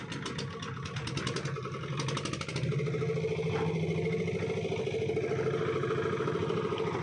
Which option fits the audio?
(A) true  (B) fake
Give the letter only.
A